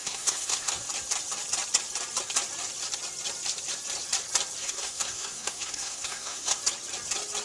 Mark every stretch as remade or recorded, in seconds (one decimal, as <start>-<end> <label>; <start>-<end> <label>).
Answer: 0.0-0.7 remade; 0.7-4.6 recorded; 4.6-6.6 remade; 6.6-7.4 recorded